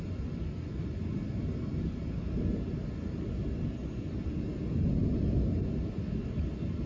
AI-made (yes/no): no